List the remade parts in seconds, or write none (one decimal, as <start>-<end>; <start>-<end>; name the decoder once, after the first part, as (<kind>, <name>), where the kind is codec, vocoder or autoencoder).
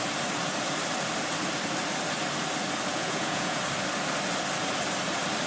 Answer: 2.9-3.6 (vocoder, Vocos)